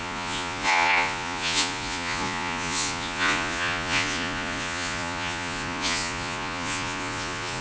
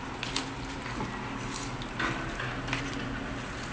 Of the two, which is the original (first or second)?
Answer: second